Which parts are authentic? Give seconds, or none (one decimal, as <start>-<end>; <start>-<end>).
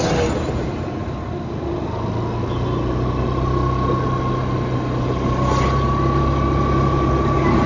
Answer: 0.0-7.7